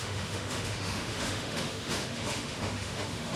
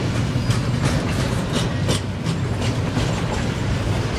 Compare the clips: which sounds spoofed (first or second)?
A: first